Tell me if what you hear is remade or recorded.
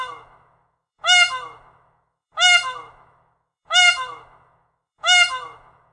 remade